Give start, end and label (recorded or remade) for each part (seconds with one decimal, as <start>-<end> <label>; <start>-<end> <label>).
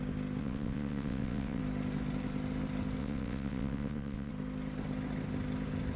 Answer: 0.0-0.4 recorded; 0.4-1.6 remade; 1.6-3.0 recorded; 3.0-4.3 remade; 4.3-6.0 recorded